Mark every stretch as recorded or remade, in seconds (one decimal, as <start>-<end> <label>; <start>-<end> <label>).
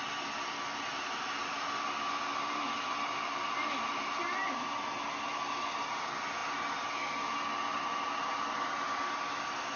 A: 0.0-9.8 recorded